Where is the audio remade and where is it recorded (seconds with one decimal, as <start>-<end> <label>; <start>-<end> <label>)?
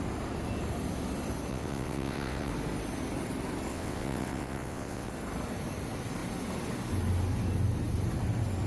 0.0-1.5 recorded; 1.5-2.5 remade; 2.5-3.7 recorded; 3.7-5.1 remade; 5.1-8.7 recorded